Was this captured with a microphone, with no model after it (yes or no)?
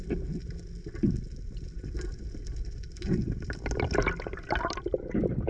yes